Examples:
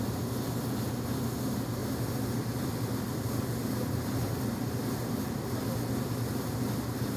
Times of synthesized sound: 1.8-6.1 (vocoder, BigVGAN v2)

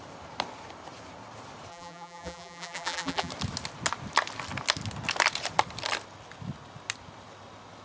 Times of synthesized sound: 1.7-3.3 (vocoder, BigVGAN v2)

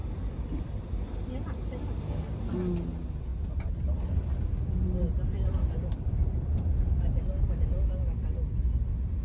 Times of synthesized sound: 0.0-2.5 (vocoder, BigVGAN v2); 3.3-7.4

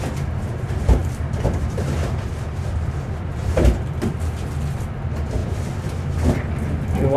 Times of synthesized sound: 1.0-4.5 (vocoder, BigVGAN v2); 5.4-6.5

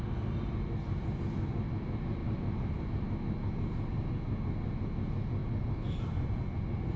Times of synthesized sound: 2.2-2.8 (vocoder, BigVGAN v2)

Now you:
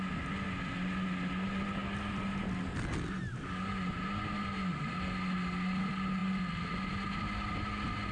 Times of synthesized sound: none